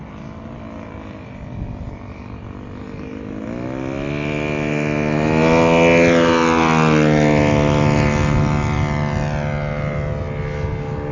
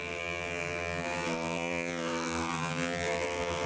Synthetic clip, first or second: second